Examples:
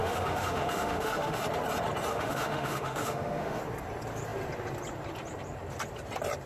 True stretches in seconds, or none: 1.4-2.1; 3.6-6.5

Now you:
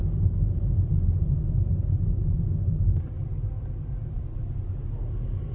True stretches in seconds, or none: 0.0-5.5

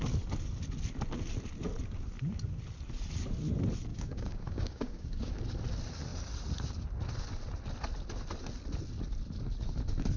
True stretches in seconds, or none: 0.0-3.9; 5.4-10.2

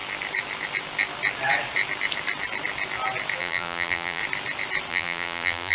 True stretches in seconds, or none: 0.0-3.4; 4.2-4.9

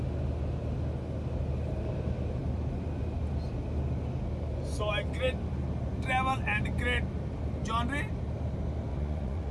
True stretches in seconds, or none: 0.0-8.9

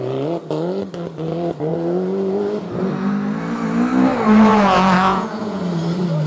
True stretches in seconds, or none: 0.0-4.5; 5.6-6.3